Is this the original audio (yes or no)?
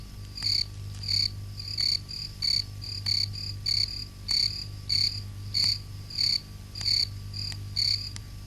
yes